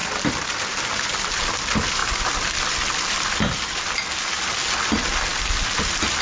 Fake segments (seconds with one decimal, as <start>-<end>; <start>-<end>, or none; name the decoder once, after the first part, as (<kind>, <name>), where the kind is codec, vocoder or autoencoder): none